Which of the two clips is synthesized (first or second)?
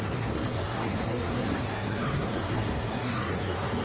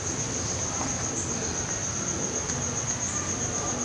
first